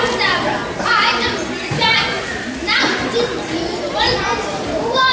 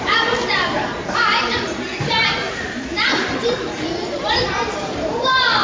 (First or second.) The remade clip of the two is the second